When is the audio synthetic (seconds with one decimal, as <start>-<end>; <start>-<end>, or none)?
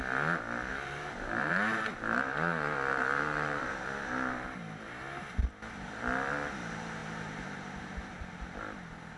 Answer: 0.7-5.2; 7.0-8.2